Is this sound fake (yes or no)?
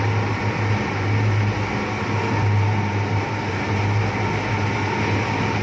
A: no